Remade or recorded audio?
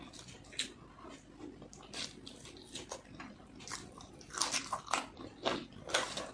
recorded